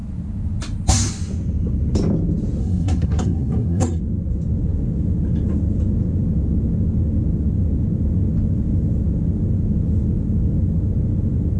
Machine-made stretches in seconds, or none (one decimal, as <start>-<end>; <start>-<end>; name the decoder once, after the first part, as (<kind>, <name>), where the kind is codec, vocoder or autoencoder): 2.6-4.0 (codec, SNAC)